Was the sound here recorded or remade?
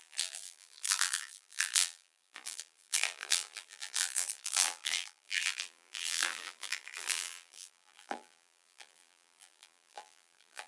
remade